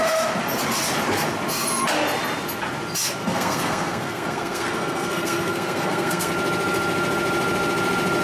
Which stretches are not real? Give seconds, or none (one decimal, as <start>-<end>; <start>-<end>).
3.2-6.3